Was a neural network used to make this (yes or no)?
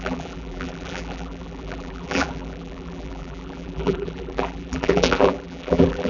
yes